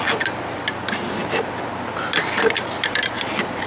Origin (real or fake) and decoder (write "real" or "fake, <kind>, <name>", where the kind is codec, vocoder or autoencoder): real